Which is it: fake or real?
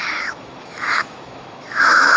fake